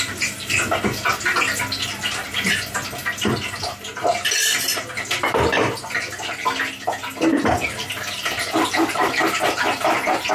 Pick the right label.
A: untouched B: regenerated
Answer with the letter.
A